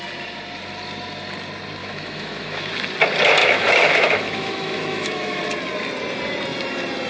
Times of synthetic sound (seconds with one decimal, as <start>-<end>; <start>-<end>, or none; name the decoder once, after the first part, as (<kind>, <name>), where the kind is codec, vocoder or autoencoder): 1.8-2.7 (autoencoder, DAC-VAE); 3.4-5.4